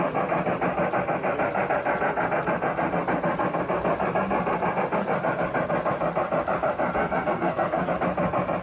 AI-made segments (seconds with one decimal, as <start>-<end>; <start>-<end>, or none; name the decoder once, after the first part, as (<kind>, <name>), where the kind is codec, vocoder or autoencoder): 7.0-7.9 (codec, SNAC)